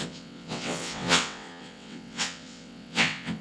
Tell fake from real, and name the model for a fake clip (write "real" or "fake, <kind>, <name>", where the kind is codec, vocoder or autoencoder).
fake, vocoder, WaveNeXt